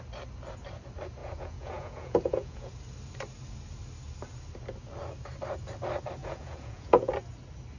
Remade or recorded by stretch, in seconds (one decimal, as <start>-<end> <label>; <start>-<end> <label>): 0.0-1.2 recorded; 1.2-2.7 remade; 2.7-6.2 recorded; 6.2-7.1 remade; 7.1-7.8 recorded